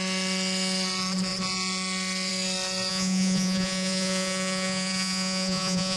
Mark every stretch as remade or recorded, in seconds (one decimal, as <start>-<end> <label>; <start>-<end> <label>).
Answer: 0.0-2.9 recorded; 2.9-6.0 remade